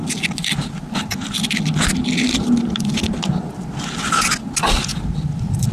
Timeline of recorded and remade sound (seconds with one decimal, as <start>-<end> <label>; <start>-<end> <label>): 0.0-5.7 recorded